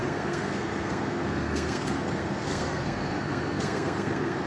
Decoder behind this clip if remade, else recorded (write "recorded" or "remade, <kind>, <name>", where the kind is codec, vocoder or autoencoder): remade, codec, SNAC